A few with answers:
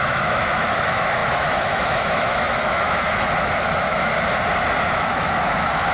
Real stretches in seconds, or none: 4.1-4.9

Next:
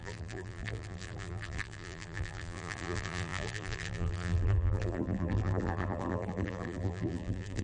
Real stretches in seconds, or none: none

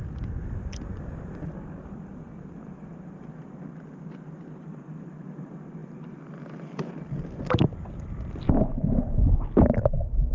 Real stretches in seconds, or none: 0.0-10.3

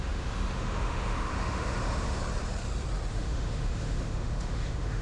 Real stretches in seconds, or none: 2.2-3.1

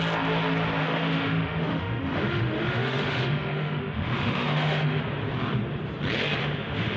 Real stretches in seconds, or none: 0.0-0.8; 5.0-6.4

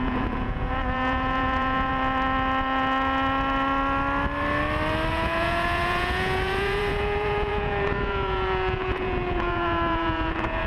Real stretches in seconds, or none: 1.9-5.1

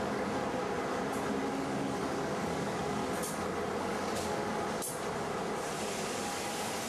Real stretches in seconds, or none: 0.6-1.5; 3.0-3.8; 4.4-5.9

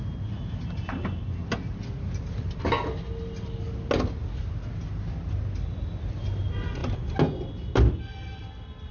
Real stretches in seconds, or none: 0.0-8.9